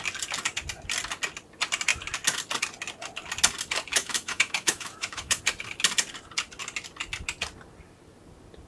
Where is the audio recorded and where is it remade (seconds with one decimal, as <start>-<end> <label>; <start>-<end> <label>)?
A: 0.0-3.9 recorded; 3.9-5.4 remade; 5.4-8.7 recorded